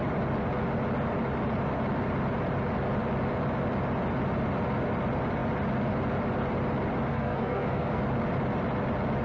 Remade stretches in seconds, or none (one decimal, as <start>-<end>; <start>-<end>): 7.1-8.0